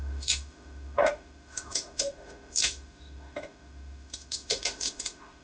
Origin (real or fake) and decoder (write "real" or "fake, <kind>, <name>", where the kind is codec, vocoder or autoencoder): fake, autoencoder, DAC-VAE